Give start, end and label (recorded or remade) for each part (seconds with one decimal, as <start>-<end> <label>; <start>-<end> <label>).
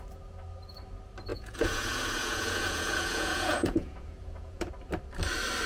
0.0-1.3 recorded; 1.3-4.7 remade; 4.7-5.7 recorded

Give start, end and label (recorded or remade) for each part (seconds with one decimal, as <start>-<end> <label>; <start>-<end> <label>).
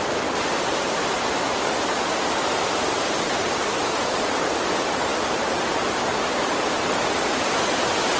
0.0-8.2 recorded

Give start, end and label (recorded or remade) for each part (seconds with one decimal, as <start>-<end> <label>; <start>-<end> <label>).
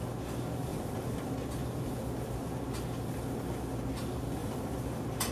0.0-0.7 recorded; 0.7-1.3 remade; 1.3-4.4 recorded; 4.4-5.3 remade